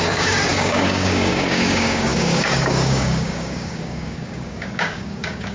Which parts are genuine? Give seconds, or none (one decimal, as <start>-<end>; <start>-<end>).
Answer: none